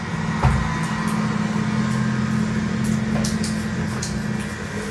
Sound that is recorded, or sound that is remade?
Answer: recorded